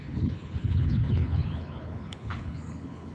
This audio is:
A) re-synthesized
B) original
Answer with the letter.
A